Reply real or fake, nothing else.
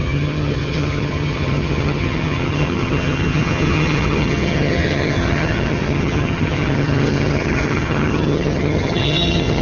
fake